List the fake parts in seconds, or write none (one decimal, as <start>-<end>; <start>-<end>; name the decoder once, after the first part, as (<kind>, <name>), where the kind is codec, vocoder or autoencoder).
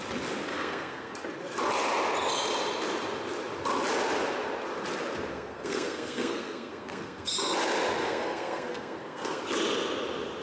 0.5-1.1 (codec, SNAC); 5.3-7.3; 8.0-9.4